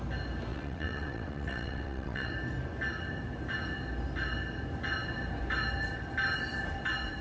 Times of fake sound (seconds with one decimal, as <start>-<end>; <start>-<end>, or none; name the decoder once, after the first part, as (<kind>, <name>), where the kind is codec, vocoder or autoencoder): 0.5-2.3 (vocoder, WaveNeXt)